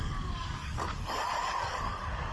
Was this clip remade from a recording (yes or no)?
yes